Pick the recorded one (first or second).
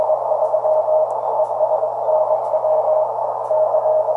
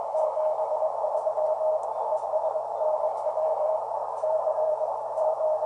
first